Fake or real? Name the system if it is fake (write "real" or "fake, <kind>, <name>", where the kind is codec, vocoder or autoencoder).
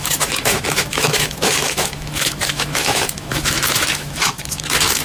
fake, autoencoder, DAC-VAE